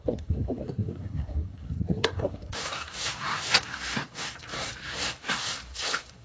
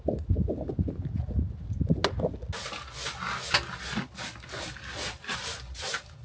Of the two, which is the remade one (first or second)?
first